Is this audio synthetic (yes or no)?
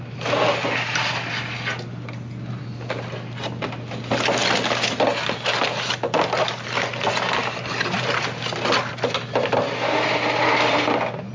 no